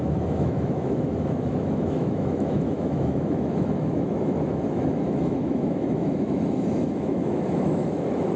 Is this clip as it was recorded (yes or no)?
no